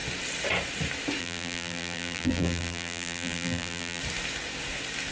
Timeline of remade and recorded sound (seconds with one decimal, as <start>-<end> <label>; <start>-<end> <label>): 0.0-1.2 recorded; 1.2-4.0 remade; 4.0-5.1 recorded